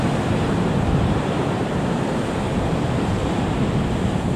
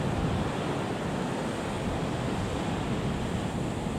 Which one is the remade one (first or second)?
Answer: first